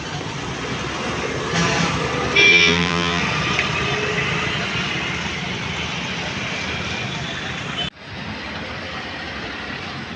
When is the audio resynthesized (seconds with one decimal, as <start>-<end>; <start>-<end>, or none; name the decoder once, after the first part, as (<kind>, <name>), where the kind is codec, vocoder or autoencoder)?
2.5-3.2 (vocoder, BigVGAN v2)